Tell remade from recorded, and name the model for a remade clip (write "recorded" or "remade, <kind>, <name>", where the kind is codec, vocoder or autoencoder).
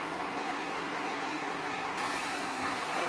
remade, codec, SNAC